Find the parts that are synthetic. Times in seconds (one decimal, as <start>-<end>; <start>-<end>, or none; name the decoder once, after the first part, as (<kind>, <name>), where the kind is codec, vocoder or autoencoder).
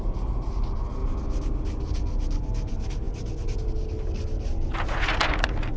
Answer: none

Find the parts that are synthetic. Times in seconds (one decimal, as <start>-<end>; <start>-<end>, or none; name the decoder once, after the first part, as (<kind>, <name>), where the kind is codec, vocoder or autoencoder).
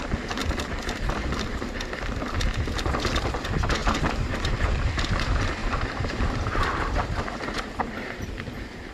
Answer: 3.8-4.7 (vocoder, BigVGAN v2); 5.6-7.7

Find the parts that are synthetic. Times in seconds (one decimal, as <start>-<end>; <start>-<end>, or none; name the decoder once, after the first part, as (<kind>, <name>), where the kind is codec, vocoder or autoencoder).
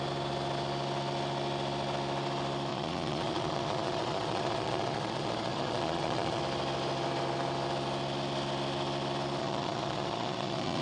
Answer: 2.7-6.4 (vocoder, Vocos); 9.4-10.8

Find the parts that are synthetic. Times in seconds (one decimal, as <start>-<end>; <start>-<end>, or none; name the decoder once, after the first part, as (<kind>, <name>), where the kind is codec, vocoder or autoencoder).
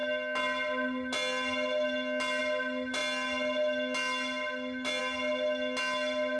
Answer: none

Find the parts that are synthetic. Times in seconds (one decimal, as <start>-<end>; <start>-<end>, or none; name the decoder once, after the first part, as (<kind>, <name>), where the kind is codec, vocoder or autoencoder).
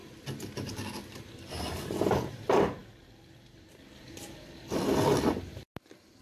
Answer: 0.0-2.8 (vocoder, BigVGAN v2)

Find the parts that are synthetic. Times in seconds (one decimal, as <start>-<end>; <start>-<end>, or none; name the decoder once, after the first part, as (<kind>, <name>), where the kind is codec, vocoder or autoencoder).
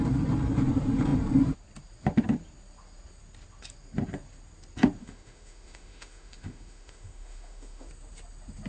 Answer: 5.0-7.9 (autoencoder, DAC-VAE)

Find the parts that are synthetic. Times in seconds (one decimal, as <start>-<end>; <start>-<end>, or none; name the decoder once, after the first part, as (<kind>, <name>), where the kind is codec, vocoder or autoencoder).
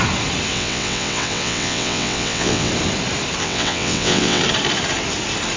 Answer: 0.5-2.7 (vocoder, WaveNeXt); 3.4-4.4